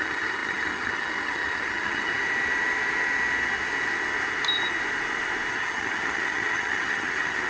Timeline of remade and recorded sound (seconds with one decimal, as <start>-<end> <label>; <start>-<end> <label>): 0.0-2.1 remade; 2.1-5.5 recorded; 5.5-7.5 remade